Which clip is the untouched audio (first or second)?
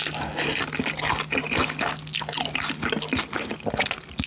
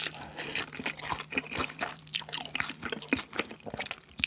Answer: first